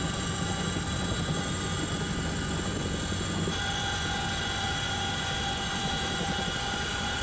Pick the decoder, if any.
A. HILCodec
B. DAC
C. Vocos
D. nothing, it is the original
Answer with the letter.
C